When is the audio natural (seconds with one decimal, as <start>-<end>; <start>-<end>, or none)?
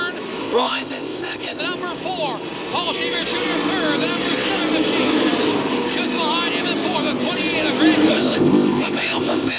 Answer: 0.0-0.4; 1.6-8.1